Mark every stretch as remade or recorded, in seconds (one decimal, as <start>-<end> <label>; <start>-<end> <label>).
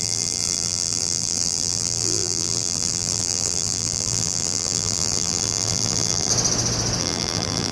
0.0-6.3 remade; 6.3-7.0 recorded; 7.0-7.7 remade